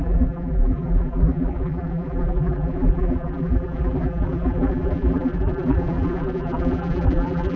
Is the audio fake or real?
fake